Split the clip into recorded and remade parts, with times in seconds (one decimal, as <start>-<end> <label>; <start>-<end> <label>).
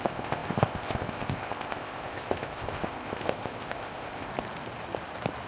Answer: 0.0-4.3 remade; 4.3-5.5 recorded